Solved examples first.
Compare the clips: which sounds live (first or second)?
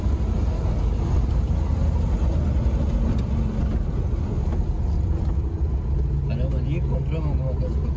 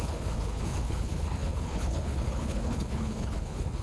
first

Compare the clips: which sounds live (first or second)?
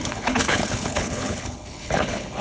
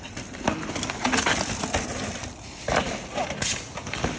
second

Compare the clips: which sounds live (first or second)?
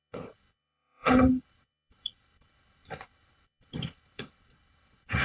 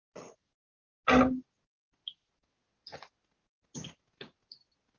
second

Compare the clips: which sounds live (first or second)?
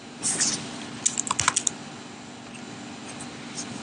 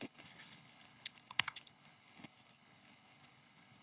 first